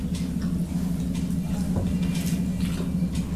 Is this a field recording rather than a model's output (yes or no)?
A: yes